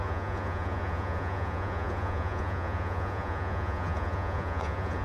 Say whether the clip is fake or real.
fake